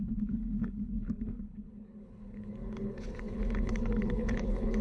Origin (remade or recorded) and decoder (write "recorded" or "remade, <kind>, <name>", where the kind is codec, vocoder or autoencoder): remade, codec, HILCodec